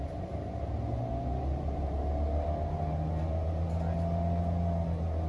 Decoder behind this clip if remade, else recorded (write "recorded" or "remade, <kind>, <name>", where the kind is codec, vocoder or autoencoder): recorded